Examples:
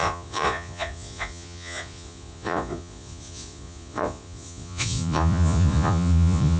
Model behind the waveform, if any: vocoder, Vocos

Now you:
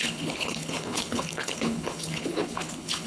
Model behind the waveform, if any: codec, HILCodec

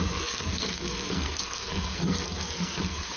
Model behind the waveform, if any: codec, SNAC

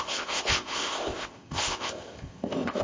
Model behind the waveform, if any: codec, ZipCodec